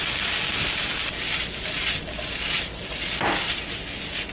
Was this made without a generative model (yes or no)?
yes